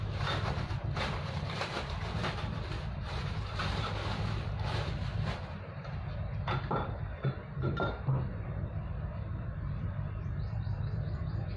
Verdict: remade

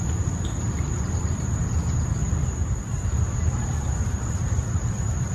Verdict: remade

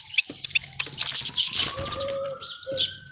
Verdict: remade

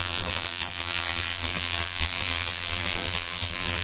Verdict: remade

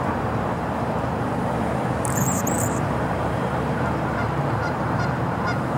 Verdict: remade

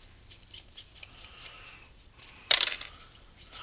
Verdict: remade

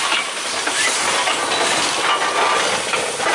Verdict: remade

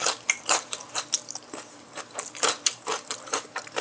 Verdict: remade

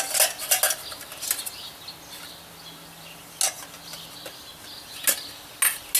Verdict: recorded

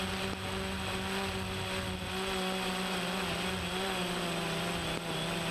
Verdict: recorded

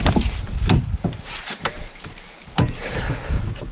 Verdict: remade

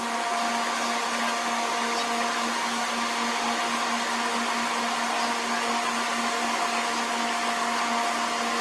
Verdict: recorded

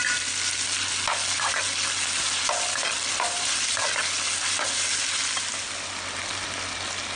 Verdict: recorded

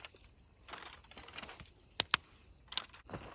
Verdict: recorded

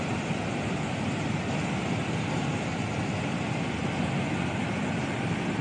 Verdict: recorded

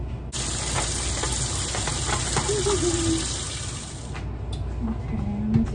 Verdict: recorded